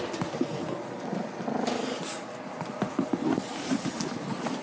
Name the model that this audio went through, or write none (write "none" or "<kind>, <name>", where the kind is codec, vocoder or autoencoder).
none